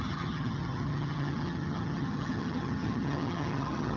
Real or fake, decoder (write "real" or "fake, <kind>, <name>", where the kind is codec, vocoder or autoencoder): fake, vocoder, HiFi-GAN